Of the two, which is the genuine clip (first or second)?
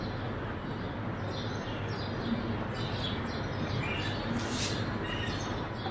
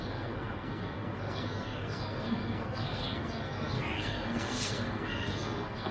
first